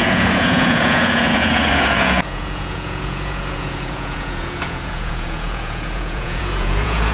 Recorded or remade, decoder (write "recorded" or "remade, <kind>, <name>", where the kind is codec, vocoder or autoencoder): remade, vocoder, Vocos